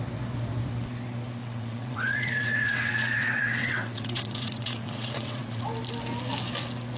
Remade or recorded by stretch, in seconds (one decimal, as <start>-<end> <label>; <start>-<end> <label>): 0.0-1.4 recorded; 1.4-5.6 remade; 5.6-7.0 recorded